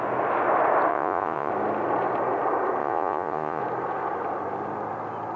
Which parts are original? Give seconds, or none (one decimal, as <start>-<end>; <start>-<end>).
0.0-0.9; 1.5-2.8; 3.6-5.4